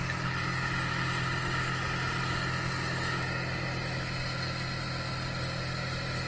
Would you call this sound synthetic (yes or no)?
no